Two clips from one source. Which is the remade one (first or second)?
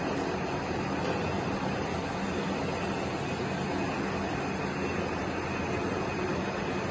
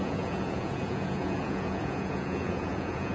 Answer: second